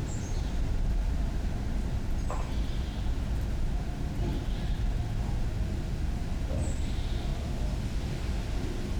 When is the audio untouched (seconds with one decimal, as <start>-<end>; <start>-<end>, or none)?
1.1-4.3; 5.0-9.0